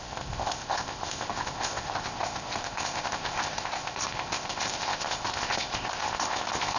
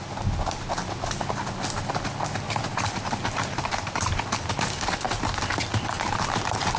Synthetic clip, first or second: first